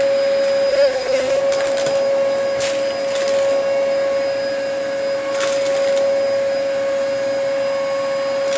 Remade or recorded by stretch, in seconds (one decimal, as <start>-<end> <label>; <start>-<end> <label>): 0.0-0.7 recorded; 0.7-1.4 remade; 1.4-8.6 recorded